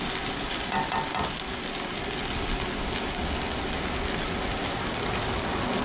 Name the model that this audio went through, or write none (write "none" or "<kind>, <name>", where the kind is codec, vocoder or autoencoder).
none